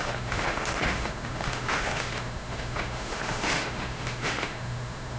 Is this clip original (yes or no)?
no